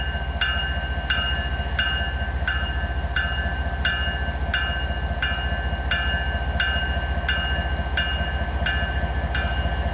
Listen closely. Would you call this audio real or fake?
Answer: real